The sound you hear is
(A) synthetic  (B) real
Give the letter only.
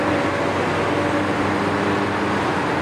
B